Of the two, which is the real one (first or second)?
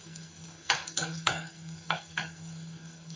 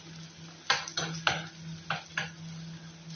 second